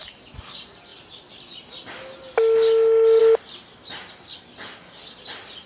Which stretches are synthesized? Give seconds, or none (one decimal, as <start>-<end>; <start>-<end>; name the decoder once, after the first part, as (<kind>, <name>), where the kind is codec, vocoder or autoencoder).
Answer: none